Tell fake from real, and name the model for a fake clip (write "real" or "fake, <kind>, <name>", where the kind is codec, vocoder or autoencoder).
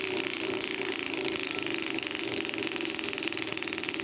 real